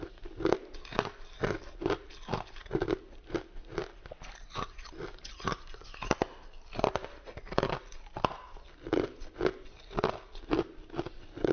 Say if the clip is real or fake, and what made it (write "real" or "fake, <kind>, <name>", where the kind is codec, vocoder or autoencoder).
real